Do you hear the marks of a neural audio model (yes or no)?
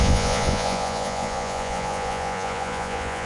yes